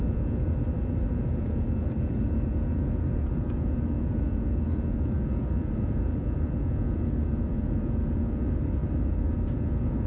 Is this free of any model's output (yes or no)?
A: no